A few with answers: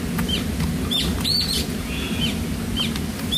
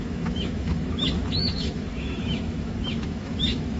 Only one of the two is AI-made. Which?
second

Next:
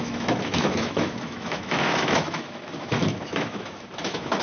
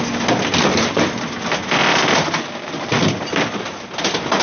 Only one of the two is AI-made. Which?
first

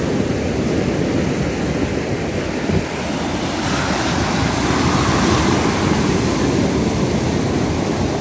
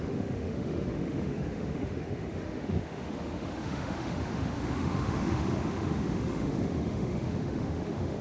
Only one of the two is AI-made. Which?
second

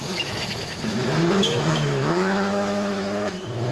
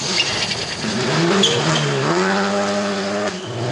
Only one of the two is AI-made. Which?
first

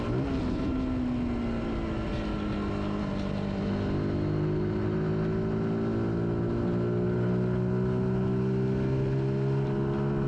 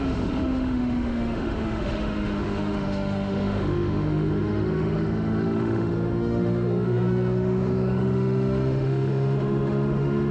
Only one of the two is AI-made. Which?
second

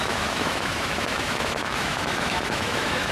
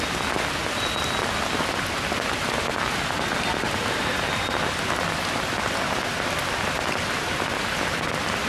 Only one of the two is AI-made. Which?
first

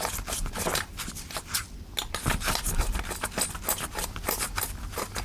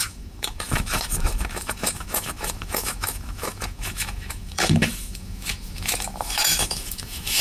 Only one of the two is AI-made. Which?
second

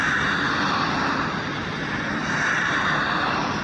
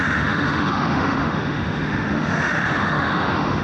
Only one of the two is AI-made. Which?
second